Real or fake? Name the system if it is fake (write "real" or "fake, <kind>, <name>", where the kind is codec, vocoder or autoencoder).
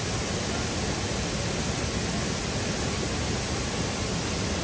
real